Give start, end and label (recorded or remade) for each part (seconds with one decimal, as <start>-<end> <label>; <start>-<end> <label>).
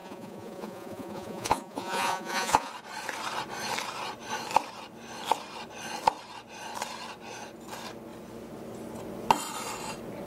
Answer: 0.0-2.7 remade; 2.7-10.3 recorded